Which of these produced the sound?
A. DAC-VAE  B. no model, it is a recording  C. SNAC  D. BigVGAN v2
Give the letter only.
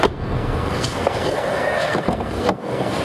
C